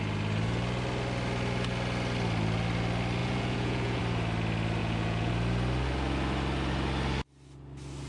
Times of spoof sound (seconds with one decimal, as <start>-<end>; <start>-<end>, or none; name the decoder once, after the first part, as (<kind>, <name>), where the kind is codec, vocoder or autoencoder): 3.2-4.0 (vocoder, Vocos); 4.8-5.3